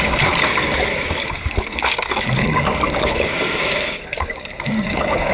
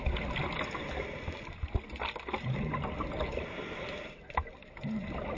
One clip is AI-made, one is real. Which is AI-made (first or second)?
first